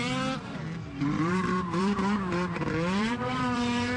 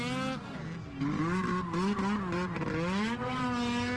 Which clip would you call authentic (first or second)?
second